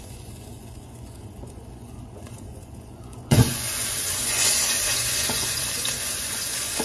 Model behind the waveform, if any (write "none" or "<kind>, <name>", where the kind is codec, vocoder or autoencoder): vocoder, Vocos